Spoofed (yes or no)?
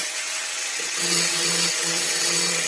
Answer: yes